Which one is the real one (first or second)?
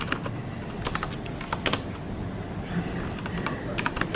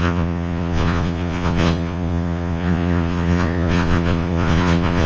first